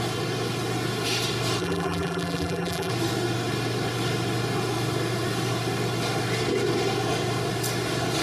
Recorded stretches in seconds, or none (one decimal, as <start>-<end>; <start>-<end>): 0.0-1.6; 2.9-8.2